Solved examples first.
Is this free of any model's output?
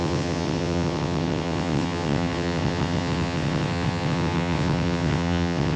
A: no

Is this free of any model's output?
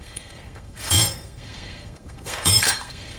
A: no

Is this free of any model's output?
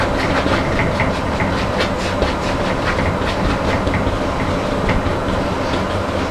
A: yes